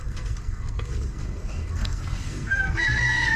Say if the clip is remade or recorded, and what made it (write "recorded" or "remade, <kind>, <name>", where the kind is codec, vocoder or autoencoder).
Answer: remade, codec, SNAC